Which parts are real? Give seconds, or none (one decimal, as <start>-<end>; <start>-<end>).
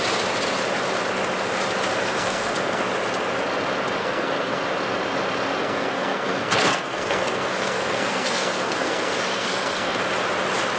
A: 0.0-1.9; 2.9-4.0; 4.6-5.6; 10.0-10.8